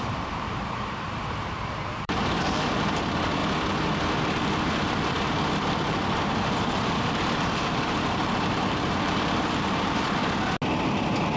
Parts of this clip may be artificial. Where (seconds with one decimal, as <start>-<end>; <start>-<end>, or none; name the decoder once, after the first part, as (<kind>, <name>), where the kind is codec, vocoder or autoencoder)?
0.0-3.4 (vocoder, BigVGAN v2); 4.2-10.2; 10.8-11.4